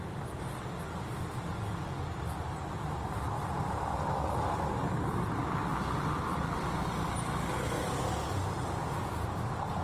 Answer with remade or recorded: recorded